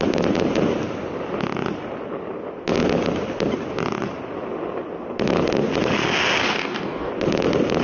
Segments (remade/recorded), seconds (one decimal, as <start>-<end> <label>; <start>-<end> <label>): 0.0-6.4 recorded; 6.4-7.1 remade; 7.1-7.8 recorded